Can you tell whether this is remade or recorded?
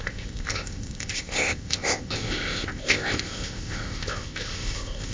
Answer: remade